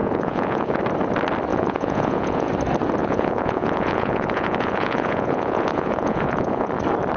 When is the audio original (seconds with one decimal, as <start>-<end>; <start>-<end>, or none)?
0.8-1.5; 2.5-3.0; 6.7-7.2